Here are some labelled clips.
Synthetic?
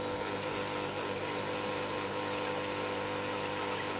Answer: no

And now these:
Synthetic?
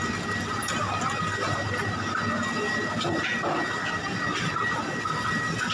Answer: no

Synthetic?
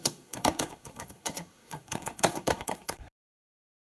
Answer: yes